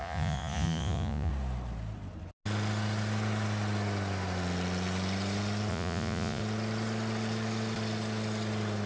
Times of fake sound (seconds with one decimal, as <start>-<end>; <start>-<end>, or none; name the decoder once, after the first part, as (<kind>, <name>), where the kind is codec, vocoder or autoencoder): 0.0-1.3 (vocoder, Vocos); 5.7-6.4